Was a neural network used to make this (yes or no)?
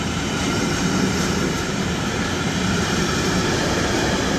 no